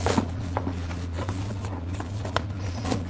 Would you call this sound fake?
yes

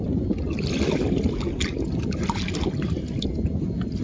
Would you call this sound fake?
no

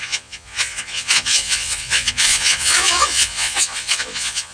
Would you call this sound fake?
yes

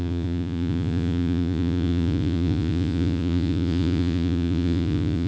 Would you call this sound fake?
yes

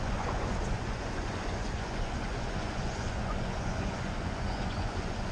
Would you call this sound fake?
yes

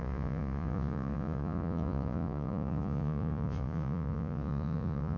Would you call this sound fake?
yes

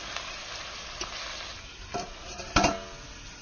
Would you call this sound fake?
no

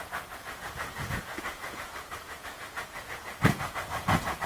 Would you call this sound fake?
yes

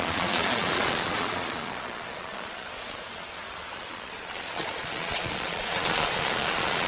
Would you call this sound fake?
yes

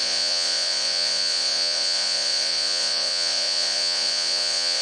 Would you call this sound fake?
yes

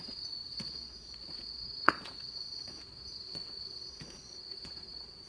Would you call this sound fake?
yes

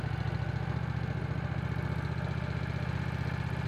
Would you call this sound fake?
no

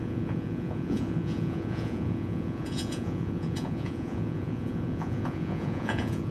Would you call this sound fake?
yes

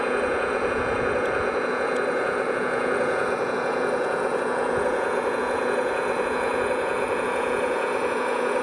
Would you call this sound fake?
yes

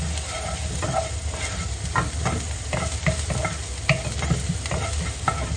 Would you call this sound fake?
no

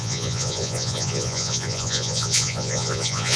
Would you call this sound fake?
yes